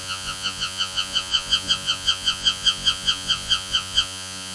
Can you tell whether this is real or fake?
fake